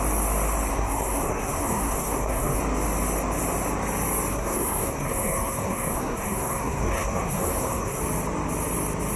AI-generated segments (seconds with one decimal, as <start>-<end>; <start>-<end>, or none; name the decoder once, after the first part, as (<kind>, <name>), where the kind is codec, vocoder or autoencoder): 0.7-2.6 (codec, SNAC); 4.3-8.0